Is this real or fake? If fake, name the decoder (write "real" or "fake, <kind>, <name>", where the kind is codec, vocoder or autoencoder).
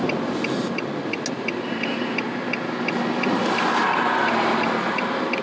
real